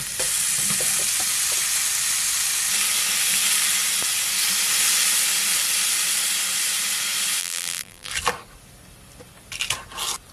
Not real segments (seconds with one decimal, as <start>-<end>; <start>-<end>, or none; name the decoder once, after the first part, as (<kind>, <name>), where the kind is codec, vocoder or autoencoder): 7.4-8.1 (vocoder, BigVGAN v2)